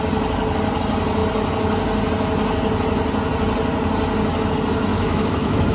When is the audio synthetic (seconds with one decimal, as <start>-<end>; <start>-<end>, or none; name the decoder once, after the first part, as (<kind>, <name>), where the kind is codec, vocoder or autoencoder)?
4.9-5.7 (autoencoder, DAC-VAE)